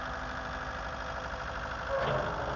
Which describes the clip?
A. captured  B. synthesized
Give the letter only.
A